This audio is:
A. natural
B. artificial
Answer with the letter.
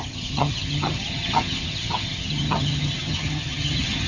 B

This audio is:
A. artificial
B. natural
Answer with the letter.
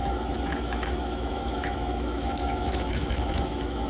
A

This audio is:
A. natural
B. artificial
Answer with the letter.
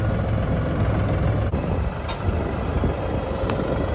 A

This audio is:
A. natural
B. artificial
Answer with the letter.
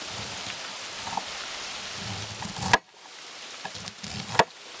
A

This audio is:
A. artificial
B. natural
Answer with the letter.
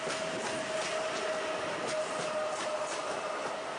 B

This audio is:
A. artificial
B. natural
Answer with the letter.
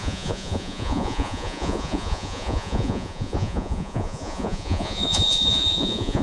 A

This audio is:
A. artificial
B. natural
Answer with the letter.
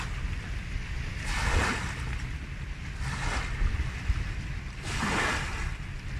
B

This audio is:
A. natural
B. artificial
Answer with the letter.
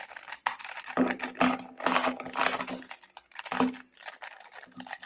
A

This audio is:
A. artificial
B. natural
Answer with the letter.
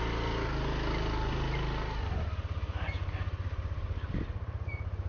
B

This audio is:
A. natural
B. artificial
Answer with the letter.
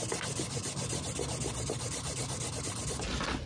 A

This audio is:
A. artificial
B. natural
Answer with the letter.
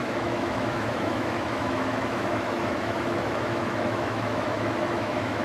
A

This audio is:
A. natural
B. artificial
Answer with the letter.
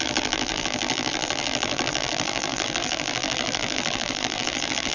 B